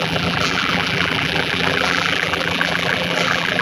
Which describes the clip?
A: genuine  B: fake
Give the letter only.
B